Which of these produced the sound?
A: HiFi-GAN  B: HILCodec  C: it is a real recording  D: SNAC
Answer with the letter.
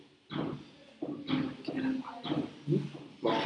C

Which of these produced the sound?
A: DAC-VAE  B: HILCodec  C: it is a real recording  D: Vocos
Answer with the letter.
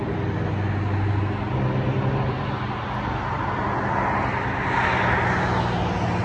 C